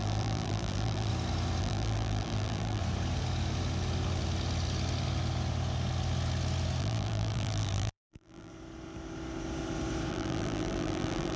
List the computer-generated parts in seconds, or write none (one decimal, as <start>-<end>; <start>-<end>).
0.0-1.1; 1.6-2.8; 6.8-8.5; 10.1-11.4